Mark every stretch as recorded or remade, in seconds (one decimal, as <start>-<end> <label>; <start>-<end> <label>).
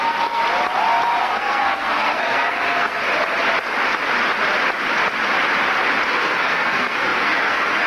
0.0-0.4 remade; 0.4-1.2 recorded; 1.2-3.1 remade; 3.1-6.1 recorded; 6.1-7.9 remade